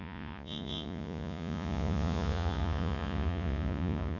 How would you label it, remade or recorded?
remade